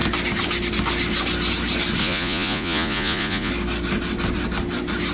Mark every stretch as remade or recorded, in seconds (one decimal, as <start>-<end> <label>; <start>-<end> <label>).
0.0-2.0 recorded; 2.0-3.5 remade; 3.5-5.1 recorded